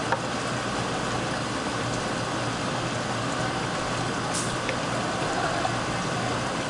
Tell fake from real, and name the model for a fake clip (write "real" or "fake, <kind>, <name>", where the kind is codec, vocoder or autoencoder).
real